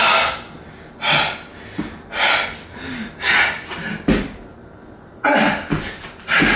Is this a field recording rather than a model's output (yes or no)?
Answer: yes